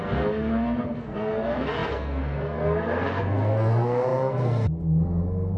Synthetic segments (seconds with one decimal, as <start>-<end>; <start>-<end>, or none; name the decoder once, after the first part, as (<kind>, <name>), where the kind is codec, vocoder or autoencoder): 0.0-5.6 (codec, SNAC)